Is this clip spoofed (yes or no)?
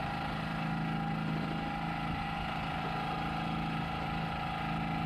no